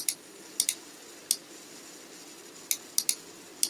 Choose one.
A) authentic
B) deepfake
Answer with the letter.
A